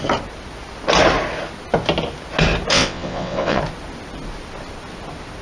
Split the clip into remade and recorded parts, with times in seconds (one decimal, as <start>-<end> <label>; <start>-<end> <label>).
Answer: 0.0-2.7 recorded; 2.7-3.6 remade; 3.6-5.4 recorded